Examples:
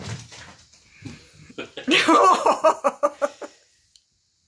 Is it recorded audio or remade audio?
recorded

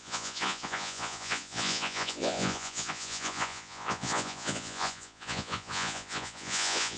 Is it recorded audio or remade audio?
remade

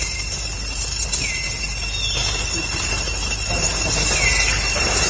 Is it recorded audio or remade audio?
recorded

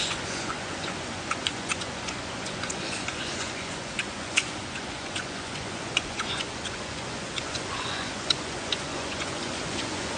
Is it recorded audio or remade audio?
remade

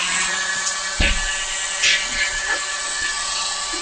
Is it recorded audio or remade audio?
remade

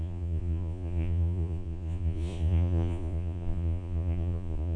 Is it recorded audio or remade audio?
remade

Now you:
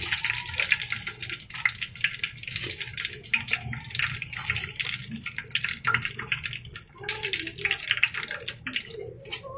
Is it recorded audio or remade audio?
recorded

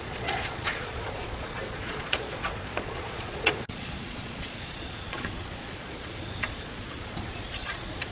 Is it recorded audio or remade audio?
remade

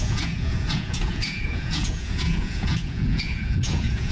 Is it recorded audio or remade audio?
remade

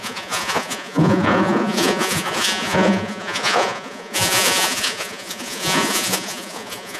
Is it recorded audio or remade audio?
remade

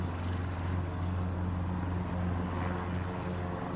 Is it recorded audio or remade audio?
recorded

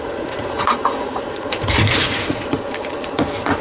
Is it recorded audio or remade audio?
remade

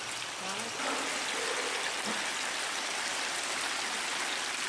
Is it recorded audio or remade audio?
recorded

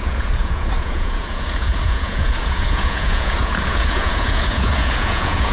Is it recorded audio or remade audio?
remade